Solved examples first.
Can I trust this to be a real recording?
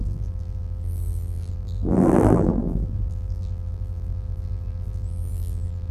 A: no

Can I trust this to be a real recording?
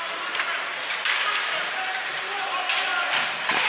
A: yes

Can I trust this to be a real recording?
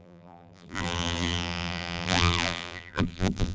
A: no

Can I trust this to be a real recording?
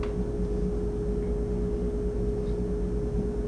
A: yes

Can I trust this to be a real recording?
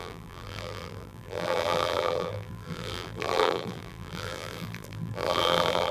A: no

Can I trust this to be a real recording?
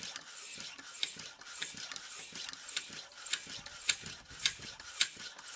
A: yes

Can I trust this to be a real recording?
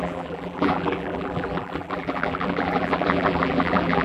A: no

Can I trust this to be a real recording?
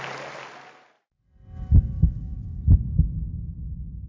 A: yes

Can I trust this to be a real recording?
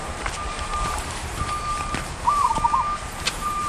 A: no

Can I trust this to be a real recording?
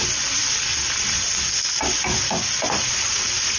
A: yes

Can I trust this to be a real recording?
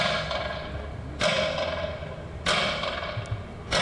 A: yes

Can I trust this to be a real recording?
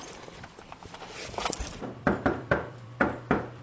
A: no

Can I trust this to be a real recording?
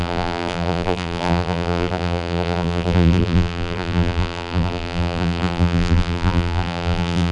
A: no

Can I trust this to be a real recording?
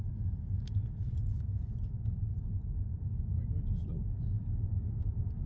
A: no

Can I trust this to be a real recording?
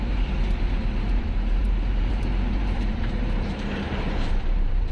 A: no